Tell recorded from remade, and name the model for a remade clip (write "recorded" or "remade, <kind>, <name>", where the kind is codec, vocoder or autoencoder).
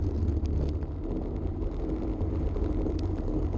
recorded